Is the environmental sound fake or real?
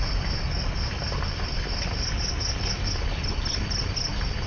real